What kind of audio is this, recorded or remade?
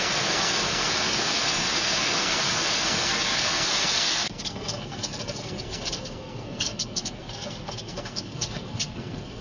remade